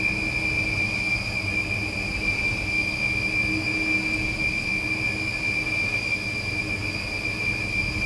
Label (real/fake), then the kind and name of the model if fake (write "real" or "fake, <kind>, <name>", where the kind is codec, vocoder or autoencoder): real